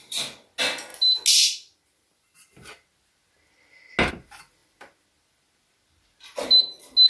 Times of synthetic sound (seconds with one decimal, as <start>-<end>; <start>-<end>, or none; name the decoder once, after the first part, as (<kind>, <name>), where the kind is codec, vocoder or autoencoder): none